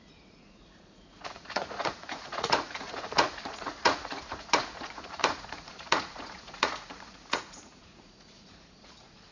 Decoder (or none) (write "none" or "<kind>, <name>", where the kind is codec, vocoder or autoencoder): vocoder, Vocos